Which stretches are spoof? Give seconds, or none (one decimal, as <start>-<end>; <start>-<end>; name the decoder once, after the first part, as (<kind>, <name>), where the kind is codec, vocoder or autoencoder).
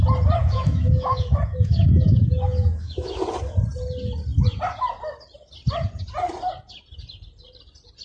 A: 0.4-3.2 (autoencoder, DAC-VAE)